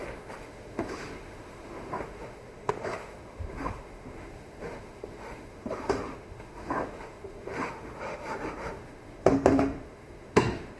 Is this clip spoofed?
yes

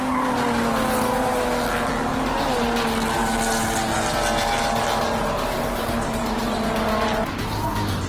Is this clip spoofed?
no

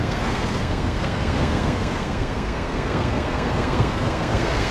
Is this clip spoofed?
yes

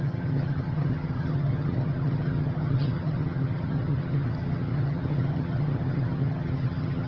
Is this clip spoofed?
yes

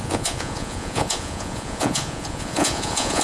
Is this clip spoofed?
yes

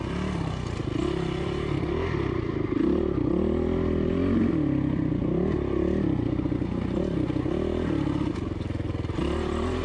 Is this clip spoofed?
no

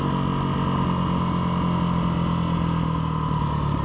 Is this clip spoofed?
no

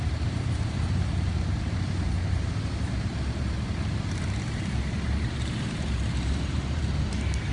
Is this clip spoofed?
yes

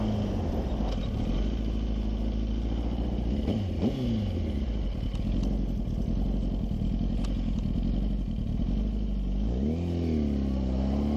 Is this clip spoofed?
no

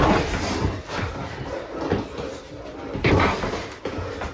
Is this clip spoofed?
no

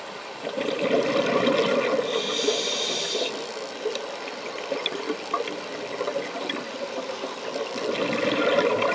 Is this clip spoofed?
no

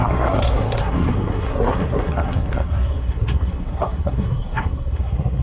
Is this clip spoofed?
yes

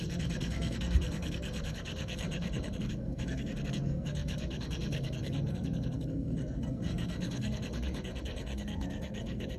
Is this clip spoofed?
yes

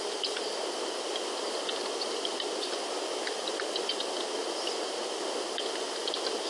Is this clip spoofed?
no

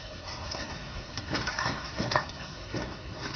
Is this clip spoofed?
yes